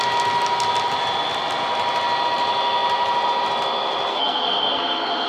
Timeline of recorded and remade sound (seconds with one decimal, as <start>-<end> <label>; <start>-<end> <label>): 0.0-4.1 recorded; 4.1-5.3 remade